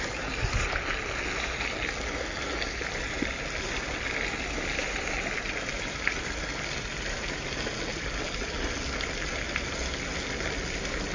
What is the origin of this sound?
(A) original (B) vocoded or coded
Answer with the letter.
A